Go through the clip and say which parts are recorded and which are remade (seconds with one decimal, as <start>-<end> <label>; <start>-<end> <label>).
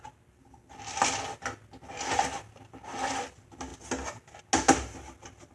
0.0-5.5 recorded